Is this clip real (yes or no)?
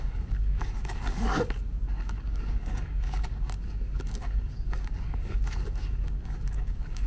no